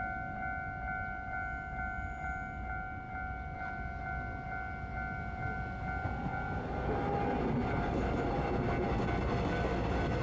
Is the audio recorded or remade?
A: recorded